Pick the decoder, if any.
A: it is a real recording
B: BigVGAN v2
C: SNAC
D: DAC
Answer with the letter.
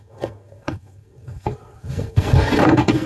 C